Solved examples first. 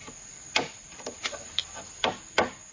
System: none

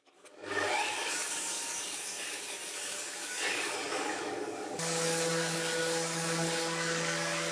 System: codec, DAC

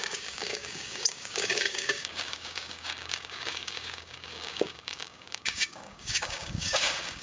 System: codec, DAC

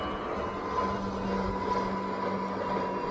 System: none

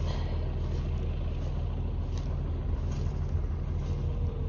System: none